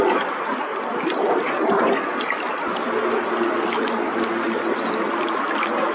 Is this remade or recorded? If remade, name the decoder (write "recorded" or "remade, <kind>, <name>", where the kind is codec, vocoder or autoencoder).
recorded